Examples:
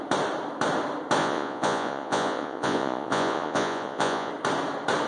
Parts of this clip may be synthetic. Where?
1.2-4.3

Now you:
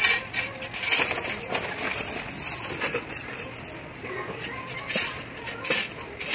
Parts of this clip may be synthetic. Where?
none

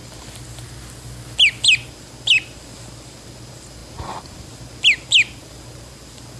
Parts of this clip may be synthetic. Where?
none